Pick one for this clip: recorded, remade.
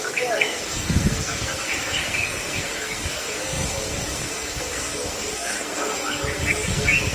remade